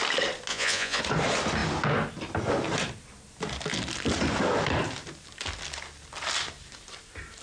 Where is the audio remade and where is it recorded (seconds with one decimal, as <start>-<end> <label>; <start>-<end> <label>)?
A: 0.0-0.5 recorded; 0.5-1.0 remade; 1.0-7.4 recorded